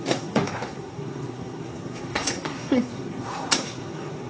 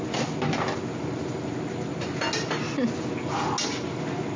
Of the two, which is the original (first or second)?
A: second